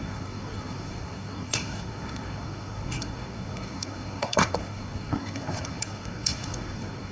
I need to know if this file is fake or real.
fake